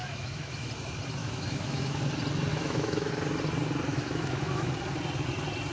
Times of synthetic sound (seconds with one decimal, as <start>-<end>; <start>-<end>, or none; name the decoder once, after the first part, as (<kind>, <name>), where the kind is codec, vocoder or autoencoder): 0.0-0.7 (autoencoder, DAC-VAE); 1.2-2.0; 2.5-3.1; 3.9-4.7